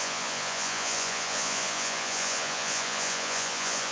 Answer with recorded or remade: remade